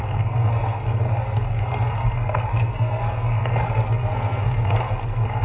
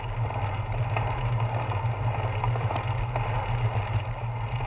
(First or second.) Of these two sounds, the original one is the second